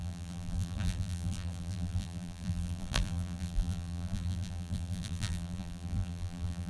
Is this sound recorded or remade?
remade